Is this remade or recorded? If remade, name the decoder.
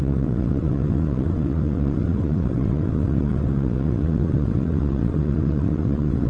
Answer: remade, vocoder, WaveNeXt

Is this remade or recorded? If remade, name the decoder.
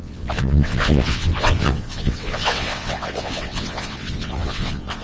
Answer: remade, vocoder, WaveNeXt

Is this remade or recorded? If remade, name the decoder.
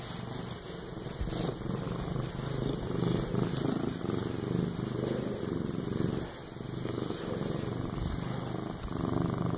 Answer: recorded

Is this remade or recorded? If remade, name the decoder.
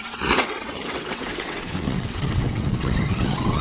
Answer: remade, vocoder, WaveNeXt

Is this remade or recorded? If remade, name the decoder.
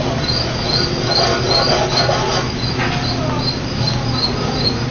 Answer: recorded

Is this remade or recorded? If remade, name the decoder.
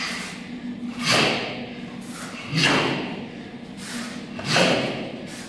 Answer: recorded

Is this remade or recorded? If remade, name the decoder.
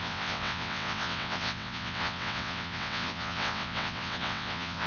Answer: remade, vocoder, WaveNeXt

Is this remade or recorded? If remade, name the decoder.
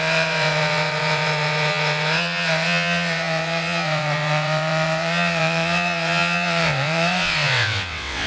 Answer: remade, vocoder, WaveNeXt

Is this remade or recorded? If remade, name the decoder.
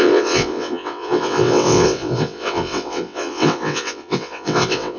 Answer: remade, vocoder, WaveNeXt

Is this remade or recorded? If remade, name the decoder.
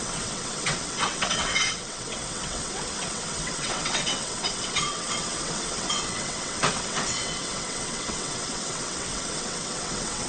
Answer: remade, vocoder, WaveNeXt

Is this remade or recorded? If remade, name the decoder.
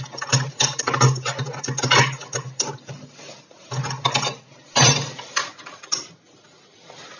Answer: recorded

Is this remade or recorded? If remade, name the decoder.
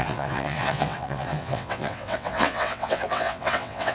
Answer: remade, vocoder, WaveNeXt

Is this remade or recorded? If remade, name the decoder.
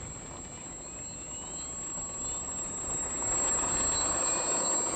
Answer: recorded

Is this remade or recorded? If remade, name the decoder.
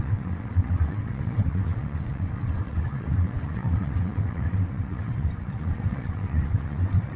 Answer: remade, vocoder, WaveNeXt